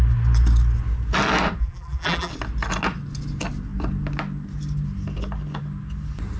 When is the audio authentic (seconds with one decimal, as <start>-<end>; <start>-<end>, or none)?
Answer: 0.0-1.6; 2.3-6.4